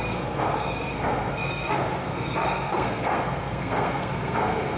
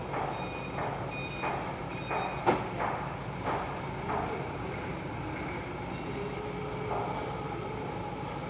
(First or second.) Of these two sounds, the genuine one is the second